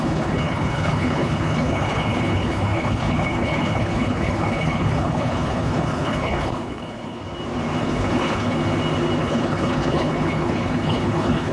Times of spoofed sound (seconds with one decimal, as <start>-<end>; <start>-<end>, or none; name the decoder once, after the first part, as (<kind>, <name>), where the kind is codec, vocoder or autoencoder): 0.0-7.2 (codec, HILCodec); 7.8-8.6; 9.2-11.5